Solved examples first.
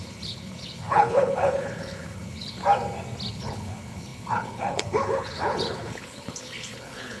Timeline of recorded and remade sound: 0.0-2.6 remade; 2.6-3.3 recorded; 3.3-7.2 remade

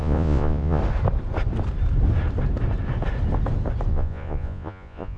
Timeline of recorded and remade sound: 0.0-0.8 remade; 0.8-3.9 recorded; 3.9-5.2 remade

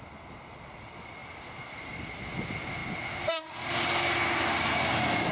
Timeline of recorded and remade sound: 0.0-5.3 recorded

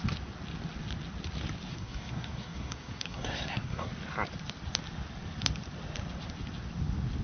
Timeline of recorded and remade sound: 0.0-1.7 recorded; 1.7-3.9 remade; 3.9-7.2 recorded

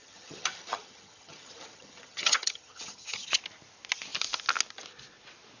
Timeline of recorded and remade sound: 0.0-3.4 remade; 3.4-5.6 recorded

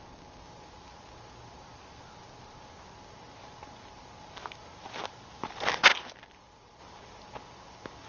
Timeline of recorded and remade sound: 0.0-8.1 recorded

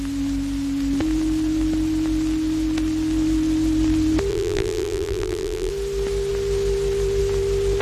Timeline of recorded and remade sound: 0.0-4.3 recorded; 4.3-5.7 remade; 5.7-7.8 recorded